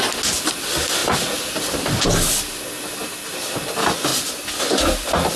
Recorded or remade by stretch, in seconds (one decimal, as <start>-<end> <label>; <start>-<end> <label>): 0.0-5.4 recorded